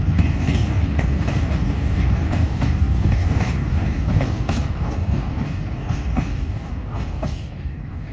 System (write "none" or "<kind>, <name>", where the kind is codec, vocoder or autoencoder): codec, DAC